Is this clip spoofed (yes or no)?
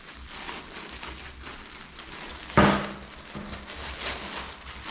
no